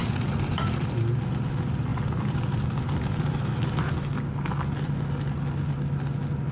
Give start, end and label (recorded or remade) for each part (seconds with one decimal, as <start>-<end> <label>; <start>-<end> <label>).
0.0-6.5 recorded